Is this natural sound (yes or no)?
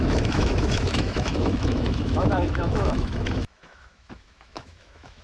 no